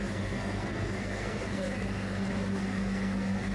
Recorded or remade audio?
remade